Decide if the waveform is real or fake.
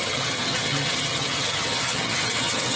fake